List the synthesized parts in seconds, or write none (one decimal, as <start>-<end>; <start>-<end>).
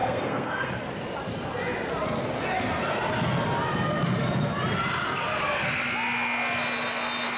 0.0-0.7